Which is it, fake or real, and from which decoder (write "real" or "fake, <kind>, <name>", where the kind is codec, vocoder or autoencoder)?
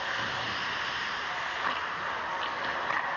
real